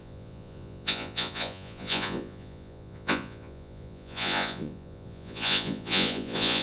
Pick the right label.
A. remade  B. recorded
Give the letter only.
A